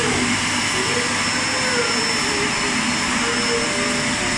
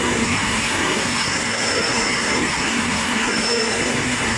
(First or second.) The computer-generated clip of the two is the second